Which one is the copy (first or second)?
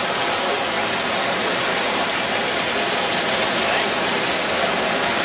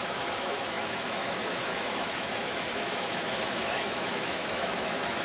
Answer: second